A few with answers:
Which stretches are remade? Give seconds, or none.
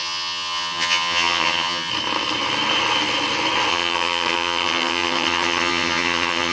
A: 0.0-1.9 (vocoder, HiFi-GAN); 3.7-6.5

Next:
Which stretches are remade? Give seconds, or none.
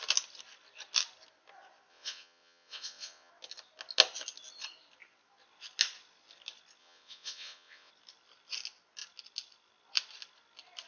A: 1.9-3.3 (vocoder, WaveNeXt); 6.8-7.9